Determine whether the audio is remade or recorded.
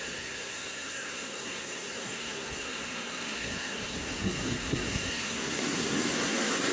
remade